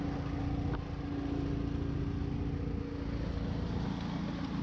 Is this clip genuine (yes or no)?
yes